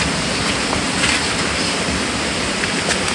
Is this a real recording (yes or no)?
yes